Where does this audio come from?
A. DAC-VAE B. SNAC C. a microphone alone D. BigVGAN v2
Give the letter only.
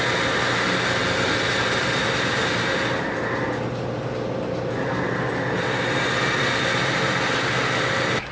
C